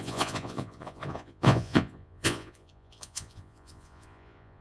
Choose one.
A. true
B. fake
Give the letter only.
B